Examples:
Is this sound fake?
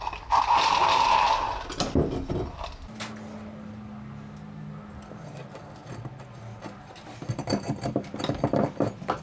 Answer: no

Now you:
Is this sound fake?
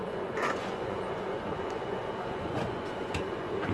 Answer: yes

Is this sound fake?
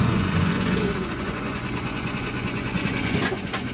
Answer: yes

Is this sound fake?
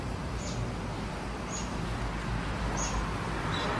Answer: no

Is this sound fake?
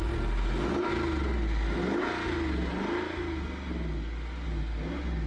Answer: no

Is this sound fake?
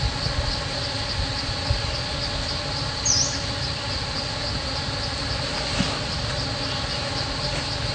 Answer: no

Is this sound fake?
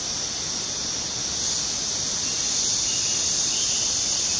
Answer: no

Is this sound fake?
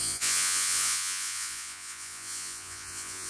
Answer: yes